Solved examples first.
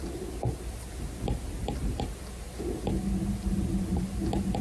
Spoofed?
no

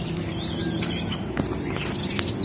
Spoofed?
no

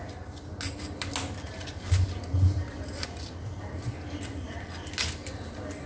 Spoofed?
no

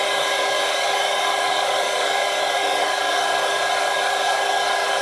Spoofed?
yes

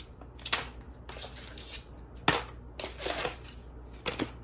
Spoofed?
no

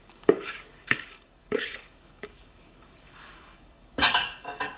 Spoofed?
yes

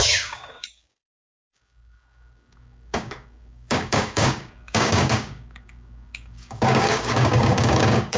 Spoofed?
yes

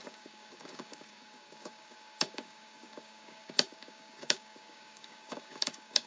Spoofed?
yes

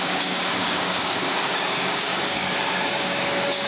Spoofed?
yes